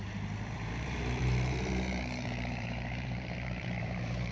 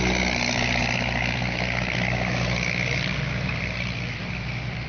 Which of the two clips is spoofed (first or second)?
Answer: first